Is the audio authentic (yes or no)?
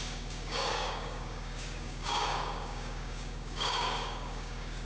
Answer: no